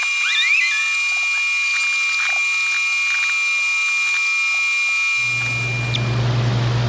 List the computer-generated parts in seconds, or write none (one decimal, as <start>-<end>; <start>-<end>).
none